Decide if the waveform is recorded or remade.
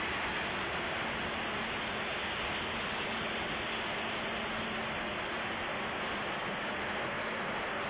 recorded